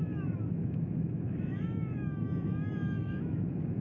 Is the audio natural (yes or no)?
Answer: no